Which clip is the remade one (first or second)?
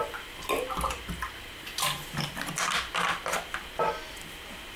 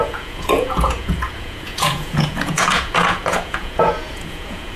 second